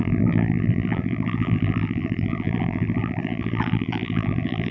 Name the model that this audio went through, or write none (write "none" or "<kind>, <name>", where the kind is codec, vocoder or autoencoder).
vocoder, BigVGAN v2